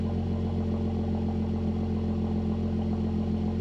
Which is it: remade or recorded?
recorded